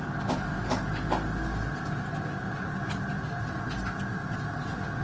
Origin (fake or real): real